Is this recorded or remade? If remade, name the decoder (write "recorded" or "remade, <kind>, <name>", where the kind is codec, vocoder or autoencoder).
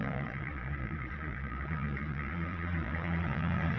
remade, vocoder, Vocos